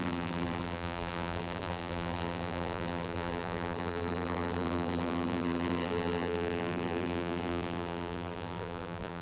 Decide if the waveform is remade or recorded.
remade